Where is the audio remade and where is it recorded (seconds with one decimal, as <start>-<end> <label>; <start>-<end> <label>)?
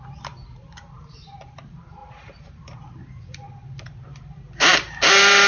0.0-5.5 remade